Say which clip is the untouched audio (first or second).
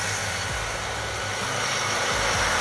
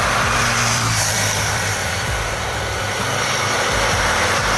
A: first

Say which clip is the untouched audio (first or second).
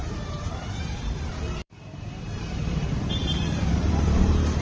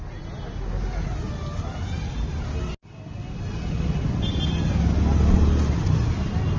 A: second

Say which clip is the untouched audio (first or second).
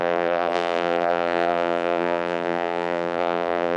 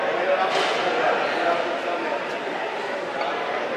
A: second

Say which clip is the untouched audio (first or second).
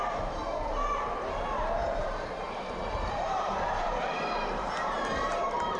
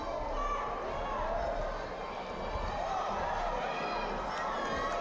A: second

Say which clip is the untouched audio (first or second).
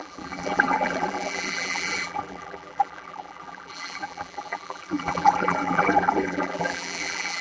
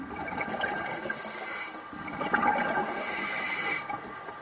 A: second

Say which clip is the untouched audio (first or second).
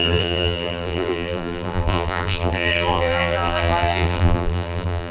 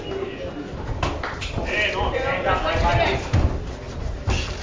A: second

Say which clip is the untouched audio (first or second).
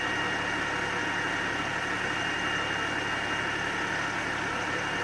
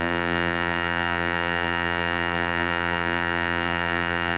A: first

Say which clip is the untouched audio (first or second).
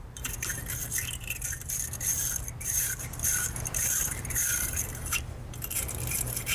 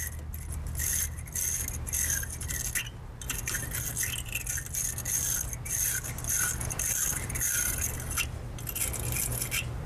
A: second